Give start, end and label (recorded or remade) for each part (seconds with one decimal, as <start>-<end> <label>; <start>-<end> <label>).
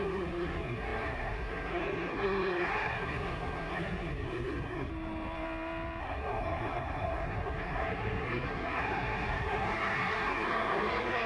0.0-4.9 remade; 4.9-6.0 recorded; 6.0-11.3 remade